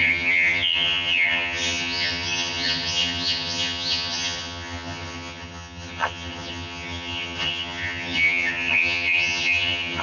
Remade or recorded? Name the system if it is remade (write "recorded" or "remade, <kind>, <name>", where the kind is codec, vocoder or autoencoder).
remade, vocoder, HiFi-GAN